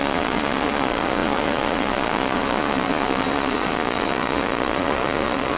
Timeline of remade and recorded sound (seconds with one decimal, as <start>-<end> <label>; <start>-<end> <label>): 0.0-5.6 remade